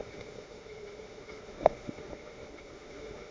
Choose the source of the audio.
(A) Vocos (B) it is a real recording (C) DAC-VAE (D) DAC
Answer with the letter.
C